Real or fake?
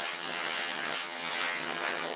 fake